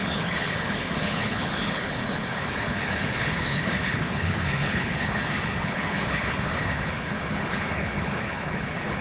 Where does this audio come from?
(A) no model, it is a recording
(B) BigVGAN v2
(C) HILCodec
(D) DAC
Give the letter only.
C